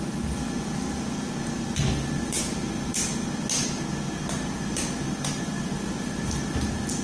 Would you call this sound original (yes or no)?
yes